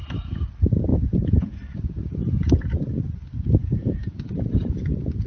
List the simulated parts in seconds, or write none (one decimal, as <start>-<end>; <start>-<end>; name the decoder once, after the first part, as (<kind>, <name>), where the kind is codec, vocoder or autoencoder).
0.9-2.5 (vocoder, Vocos); 3.6-5.3